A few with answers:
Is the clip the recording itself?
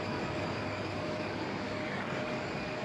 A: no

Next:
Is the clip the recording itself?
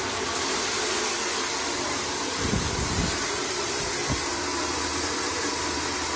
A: yes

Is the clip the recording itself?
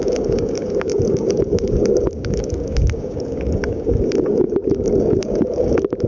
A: no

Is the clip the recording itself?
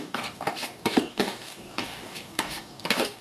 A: no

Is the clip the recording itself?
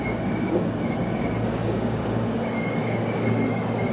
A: no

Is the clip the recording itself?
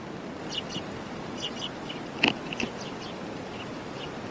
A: yes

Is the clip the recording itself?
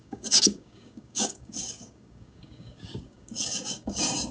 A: no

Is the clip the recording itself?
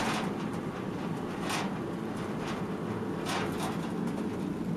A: yes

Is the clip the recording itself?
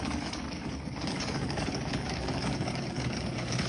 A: no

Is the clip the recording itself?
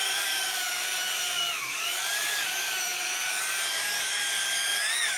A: no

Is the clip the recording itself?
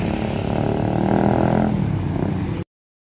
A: yes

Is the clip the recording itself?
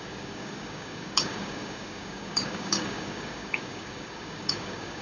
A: no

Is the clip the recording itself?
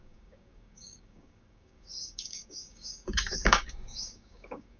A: no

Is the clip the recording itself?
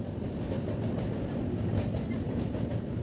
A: yes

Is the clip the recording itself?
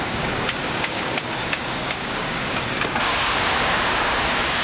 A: no